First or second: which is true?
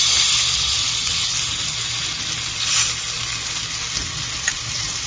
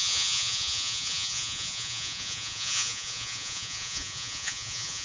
first